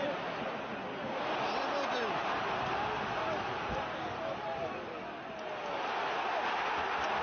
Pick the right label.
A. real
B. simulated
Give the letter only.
A